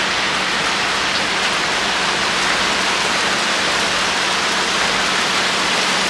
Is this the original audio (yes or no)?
yes